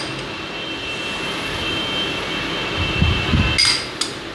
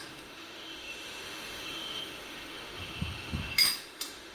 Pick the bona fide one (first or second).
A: first